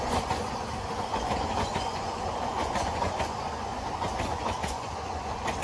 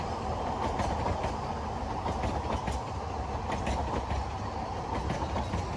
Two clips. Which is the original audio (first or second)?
second